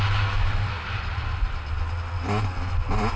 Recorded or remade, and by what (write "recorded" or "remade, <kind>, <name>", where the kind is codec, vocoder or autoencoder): recorded